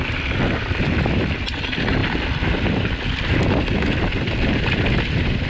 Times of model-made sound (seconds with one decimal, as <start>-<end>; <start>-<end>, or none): none